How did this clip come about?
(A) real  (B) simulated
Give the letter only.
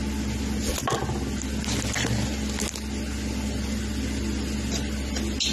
A